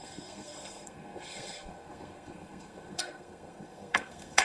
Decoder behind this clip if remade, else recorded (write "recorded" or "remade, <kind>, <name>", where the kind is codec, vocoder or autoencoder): remade, codec, SNAC